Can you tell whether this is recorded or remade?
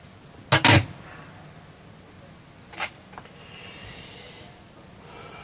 recorded